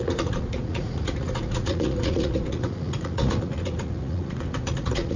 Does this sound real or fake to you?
fake